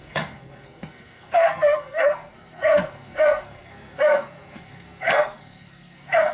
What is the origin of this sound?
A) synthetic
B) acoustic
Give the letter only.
A